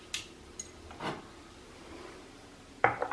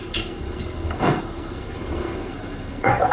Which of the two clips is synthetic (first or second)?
second